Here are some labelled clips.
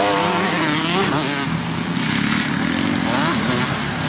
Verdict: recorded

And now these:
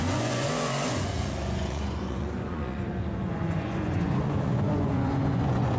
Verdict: remade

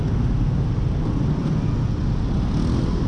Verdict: recorded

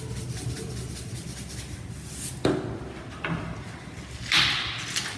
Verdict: recorded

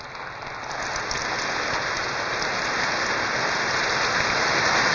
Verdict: recorded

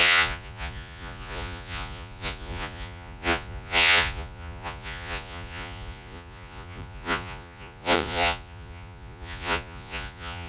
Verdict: remade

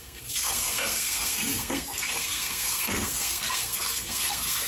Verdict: remade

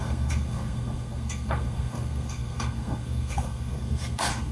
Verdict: remade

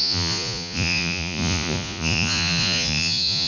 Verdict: remade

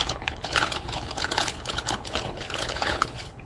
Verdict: remade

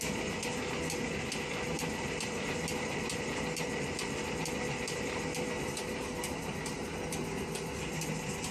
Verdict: recorded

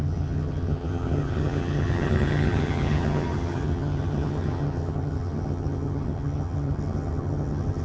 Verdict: remade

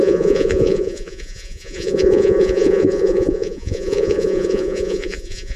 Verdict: remade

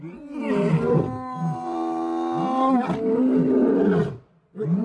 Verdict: recorded